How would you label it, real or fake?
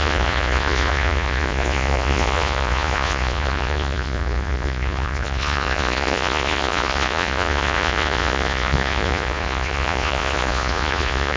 fake